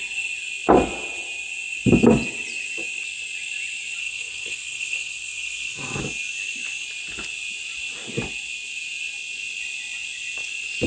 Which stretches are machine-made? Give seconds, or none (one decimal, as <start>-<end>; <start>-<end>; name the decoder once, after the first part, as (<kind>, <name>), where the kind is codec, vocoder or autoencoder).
4.0-6.0 (codec, SNAC)